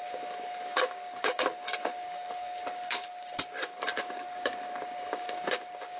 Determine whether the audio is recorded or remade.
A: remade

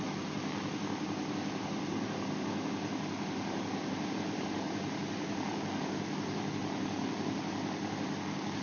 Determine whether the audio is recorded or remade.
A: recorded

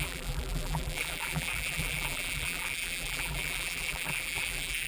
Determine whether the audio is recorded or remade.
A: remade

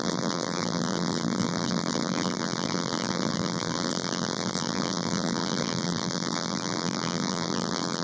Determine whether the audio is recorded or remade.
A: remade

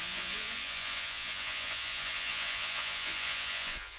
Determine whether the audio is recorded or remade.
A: remade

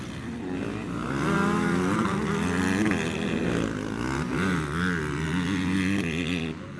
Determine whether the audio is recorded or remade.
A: recorded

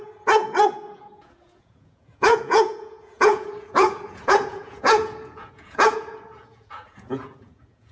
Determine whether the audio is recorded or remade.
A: remade